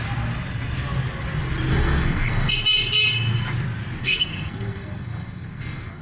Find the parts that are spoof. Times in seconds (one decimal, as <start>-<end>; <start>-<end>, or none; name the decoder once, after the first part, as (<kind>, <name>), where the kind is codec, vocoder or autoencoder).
1.7-2.5 (codec, SNAC); 4.0-6.0